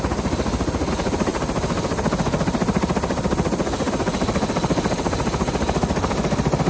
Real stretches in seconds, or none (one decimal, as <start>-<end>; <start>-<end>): 0.0-6.7